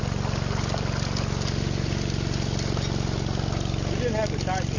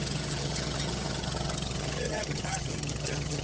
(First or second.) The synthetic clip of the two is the second